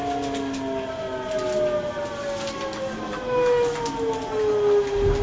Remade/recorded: recorded